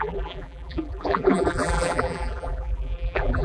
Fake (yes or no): yes